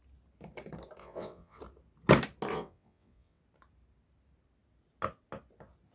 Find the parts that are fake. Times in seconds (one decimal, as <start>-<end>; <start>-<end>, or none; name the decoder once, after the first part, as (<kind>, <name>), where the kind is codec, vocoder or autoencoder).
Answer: 1.0-1.6 (vocoder, WaveNeXt); 2.5-3.4